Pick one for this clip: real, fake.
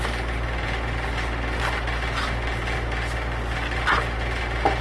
real